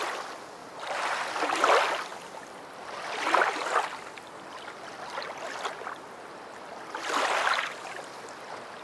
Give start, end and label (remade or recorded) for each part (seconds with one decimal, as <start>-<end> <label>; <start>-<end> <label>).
0.0-0.6 recorded; 0.6-1.2 remade; 1.2-8.8 recorded